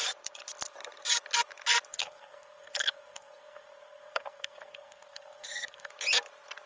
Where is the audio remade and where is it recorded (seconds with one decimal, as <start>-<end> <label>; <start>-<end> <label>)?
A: 0.0-1.9 recorded; 1.9-5.9 remade; 5.9-6.7 recorded